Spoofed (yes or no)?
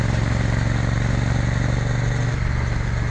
no